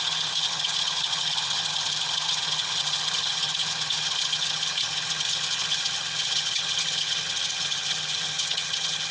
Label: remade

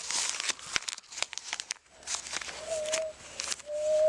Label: recorded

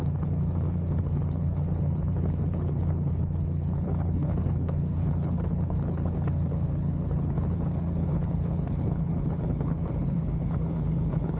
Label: remade